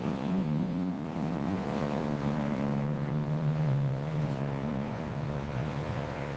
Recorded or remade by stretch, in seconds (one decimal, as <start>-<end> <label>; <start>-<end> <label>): 0.0-6.4 remade